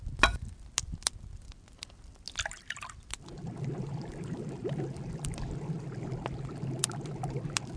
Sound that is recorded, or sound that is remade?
recorded